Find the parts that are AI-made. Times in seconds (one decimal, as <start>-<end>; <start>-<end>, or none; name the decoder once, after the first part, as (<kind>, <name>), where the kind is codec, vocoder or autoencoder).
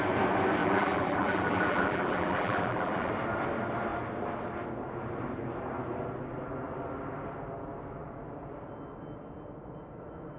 0.6-3.1 (vocoder, BigVGAN v2)